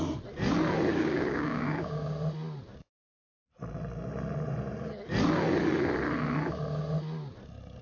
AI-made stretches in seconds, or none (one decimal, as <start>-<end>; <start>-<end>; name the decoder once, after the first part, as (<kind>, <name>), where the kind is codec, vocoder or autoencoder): 0.9-2.0 (codec, DAC)